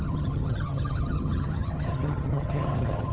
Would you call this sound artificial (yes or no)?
yes